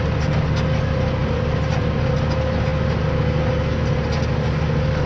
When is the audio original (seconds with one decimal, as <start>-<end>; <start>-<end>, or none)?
0.0-5.1